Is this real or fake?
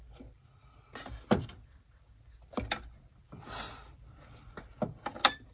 real